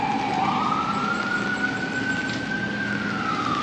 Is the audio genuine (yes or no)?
yes